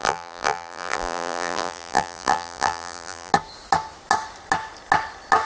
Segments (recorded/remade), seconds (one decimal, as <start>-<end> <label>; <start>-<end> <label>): 0.0-3.3 remade; 3.3-5.5 recorded